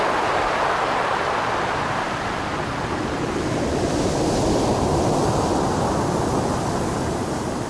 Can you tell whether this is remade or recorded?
recorded